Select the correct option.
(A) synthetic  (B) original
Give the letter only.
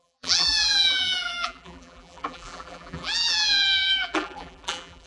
A